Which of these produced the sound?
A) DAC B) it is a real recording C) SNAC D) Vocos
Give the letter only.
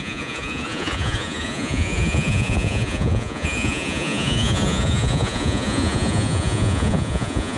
D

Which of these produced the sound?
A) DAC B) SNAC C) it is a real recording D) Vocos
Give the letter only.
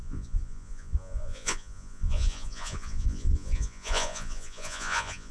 D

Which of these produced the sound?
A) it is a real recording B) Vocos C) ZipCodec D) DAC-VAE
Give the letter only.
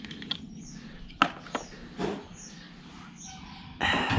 A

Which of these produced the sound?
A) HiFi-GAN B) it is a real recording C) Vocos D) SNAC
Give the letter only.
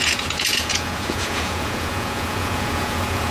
C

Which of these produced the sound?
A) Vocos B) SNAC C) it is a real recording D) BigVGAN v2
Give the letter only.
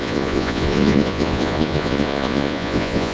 A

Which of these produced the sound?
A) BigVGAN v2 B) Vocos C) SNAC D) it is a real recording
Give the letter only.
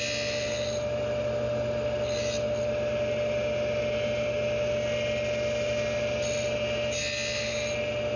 D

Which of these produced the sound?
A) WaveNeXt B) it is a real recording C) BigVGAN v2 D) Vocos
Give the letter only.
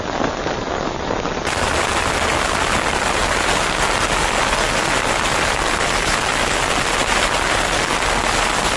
B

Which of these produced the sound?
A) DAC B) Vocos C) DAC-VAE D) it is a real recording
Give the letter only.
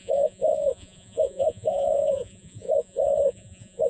B